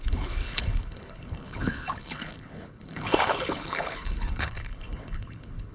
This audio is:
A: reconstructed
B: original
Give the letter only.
A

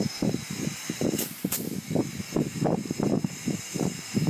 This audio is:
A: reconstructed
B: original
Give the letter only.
A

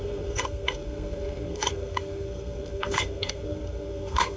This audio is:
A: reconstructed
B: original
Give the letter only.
A